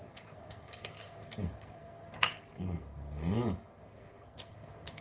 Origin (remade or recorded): remade